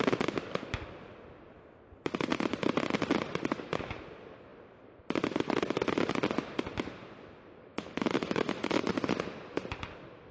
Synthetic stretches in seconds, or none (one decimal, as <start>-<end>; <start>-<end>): 7.7-8.9